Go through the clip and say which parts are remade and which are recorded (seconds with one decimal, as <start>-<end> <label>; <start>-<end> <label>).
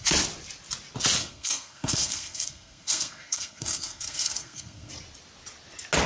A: 0.0-1.2 recorded; 1.2-4.9 remade; 4.9-6.1 recorded